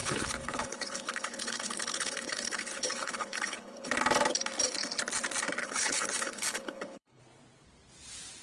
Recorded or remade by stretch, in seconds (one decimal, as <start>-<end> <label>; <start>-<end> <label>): 0.0-3.9 remade; 3.9-5.6 recorded; 5.6-7.2 remade; 7.2-8.4 recorded